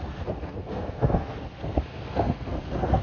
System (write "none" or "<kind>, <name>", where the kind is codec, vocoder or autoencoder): codec, SNAC